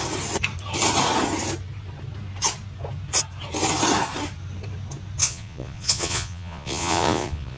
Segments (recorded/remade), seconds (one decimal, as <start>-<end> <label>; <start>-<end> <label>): 0.0-5.2 recorded; 5.2-7.6 remade